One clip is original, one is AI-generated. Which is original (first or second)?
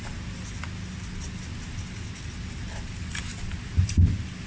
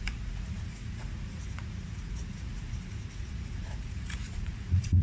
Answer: first